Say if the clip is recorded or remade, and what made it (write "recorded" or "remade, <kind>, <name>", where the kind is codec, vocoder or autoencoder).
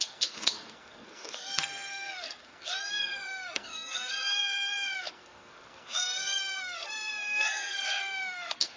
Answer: remade, codec, SNAC